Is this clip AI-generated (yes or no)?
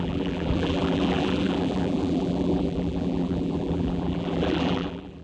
yes